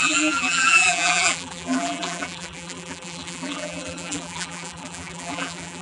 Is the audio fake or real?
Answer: fake